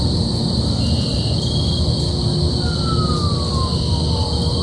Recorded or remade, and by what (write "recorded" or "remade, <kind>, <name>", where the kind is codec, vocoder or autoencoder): recorded